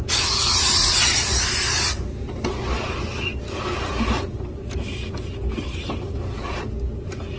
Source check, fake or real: real